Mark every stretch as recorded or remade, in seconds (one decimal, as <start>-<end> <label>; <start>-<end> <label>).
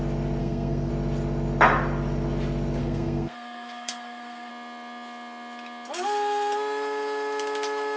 0.0-0.4 recorded; 0.4-0.9 remade; 0.9-2.8 recorded; 2.8-4.5 remade; 4.5-8.0 recorded